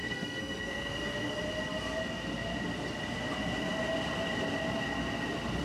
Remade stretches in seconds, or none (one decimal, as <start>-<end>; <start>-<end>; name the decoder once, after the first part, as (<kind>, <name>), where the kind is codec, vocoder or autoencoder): 0.0-0.9 (codec, SNAC)